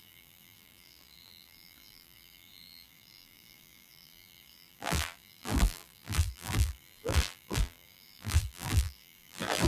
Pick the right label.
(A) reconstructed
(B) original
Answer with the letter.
A